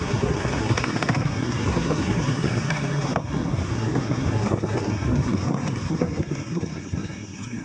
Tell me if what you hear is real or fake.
fake